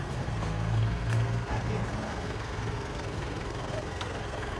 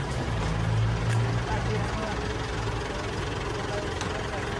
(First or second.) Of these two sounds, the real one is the second